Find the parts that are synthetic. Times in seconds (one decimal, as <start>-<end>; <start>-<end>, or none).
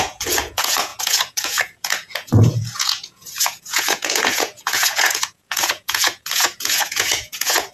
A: 0.0-7.7